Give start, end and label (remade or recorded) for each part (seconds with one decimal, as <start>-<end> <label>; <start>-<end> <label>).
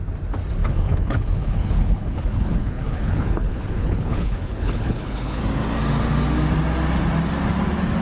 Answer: 0.0-0.6 recorded; 0.6-5.4 remade; 5.4-8.0 recorded